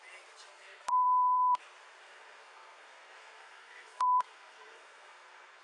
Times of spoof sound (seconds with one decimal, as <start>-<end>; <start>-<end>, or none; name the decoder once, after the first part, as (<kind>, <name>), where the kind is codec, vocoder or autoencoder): 0.5-1.6 (codec, SNAC); 2.0-5.6